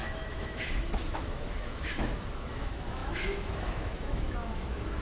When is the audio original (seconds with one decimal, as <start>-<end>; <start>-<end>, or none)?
none